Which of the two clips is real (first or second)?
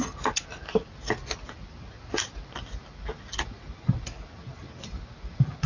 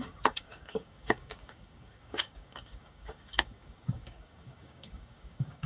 first